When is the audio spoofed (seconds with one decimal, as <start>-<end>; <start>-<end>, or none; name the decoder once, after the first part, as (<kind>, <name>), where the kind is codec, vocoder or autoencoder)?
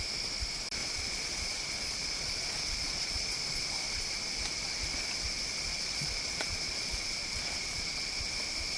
0.8-3.3 (vocoder, Vocos); 5.7-8.3